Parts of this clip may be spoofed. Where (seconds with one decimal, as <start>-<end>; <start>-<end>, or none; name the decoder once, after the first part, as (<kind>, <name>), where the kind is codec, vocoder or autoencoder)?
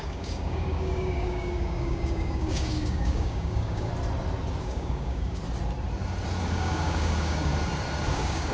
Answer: 0.0-3.9 (codec, DAC); 4.6-5.4; 6.5-7.5; 8.1-8.5